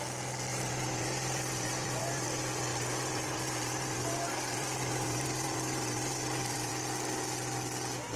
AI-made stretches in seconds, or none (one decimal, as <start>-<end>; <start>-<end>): 0.5-2.3; 2.7-6.7